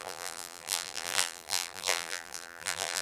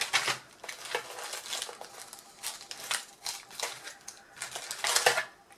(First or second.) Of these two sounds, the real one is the second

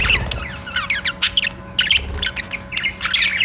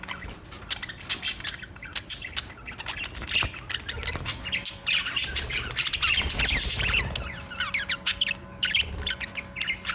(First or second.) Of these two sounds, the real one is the first